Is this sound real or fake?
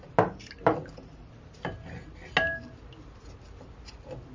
real